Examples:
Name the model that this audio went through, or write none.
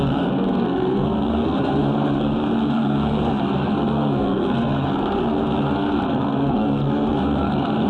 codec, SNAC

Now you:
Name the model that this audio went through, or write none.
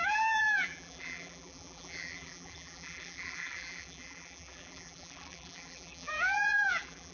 vocoder, BigVGAN v2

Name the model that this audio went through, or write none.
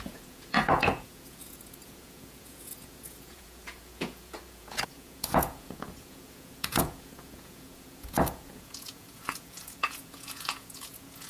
vocoder, Vocos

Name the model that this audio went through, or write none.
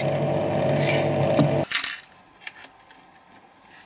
none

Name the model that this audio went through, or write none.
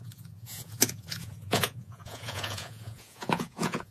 vocoder, Vocos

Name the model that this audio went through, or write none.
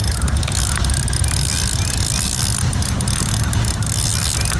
none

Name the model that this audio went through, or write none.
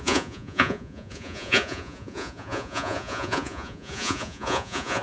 vocoder, Vocos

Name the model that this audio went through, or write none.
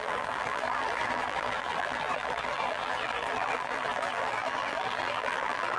vocoder, BigVGAN v2